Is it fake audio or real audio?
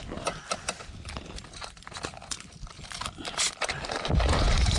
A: fake